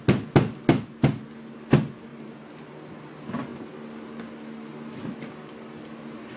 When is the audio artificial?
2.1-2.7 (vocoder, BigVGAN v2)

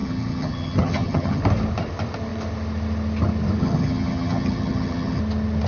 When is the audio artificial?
0.0-1.4 (vocoder, HiFi-GAN); 3.6-5.2

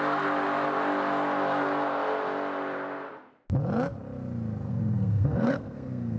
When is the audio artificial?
4.7-6.2 (codec, SNAC)

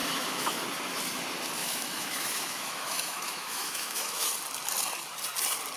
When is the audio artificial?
0.0-0.6 (autoencoder, DAC-VAE); 1.6-4.3

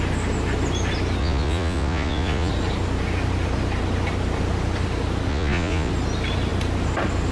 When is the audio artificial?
1.2-2.5 (vocoder, Vocos); 5.3-5.9

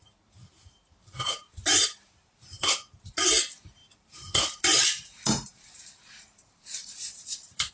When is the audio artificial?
0.9-2.7 (vocoder, BigVGAN v2); 3.8-7.7

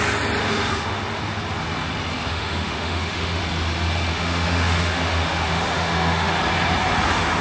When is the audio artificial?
0.4-1.0 (autoencoder, DAC-VAE); 2.3-3.4; 4.1-6.4

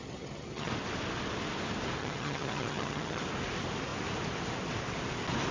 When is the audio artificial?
0.0-0.7 (vocoder, HiFi-GAN); 2.0-3.2